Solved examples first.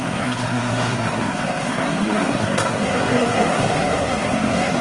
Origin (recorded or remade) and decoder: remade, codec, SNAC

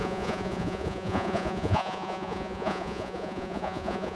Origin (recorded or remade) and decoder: remade, vocoder, Vocos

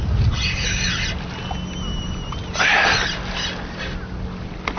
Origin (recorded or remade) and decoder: recorded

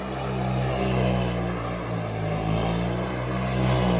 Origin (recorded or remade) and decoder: recorded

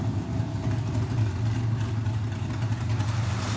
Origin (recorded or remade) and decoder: recorded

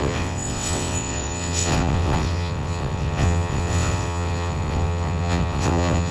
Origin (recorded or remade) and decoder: remade, vocoder, WaveNeXt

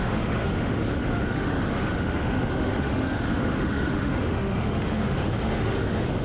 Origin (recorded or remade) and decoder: remade, autoencoder, DAC-VAE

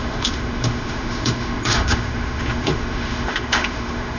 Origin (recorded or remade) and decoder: remade, autoencoder, DAC-VAE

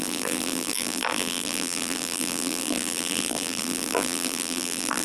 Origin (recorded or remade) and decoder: remade, vocoder, BigVGAN v2